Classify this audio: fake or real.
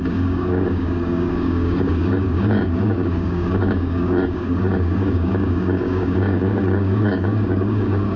fake